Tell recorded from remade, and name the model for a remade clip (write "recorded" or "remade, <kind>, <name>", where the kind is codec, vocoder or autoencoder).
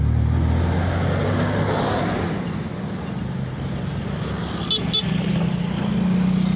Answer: recorded